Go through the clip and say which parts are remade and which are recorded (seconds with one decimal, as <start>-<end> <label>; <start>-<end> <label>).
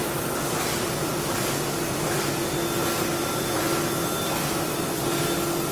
0.0-5.7 recorded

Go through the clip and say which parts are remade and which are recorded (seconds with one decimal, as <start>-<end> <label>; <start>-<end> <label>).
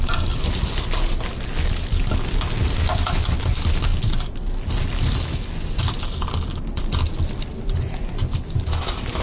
0.0-9.2 recorded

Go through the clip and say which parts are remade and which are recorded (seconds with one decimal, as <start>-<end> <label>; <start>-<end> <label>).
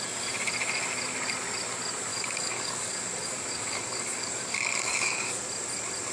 0.0-2.1 recorded; 2.1-5.4 remade; 5.4-6.1 recorded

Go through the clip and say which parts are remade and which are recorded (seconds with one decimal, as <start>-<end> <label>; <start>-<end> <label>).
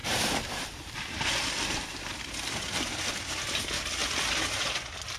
0.0-3.1 remade; 3.1-5.2 recorded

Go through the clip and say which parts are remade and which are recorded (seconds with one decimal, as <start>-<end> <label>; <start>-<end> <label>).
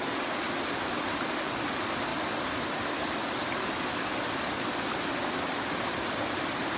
0.0-2.1 remade; 2.1-5.2 recorded; 5.2-6.8 remade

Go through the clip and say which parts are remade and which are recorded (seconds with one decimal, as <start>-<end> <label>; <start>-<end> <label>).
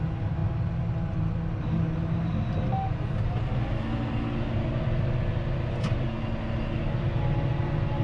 0.0-8.0 recorded